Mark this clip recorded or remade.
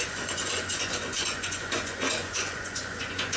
remade